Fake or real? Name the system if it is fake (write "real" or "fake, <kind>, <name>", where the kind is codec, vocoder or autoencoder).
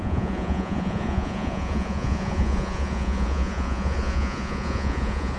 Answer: fake, vocoder, Vocos